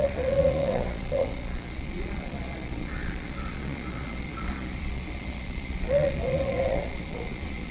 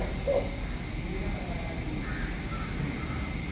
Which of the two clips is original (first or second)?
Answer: second